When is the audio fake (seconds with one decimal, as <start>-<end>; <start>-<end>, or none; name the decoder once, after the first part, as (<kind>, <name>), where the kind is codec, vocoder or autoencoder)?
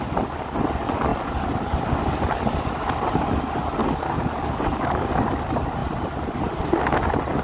3.8-5.0 (codec, DAC)